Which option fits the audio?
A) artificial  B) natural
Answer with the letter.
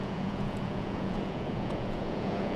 A